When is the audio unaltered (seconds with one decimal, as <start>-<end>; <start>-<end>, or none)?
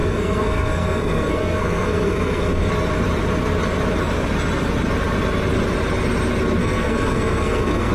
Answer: 2.7-6.6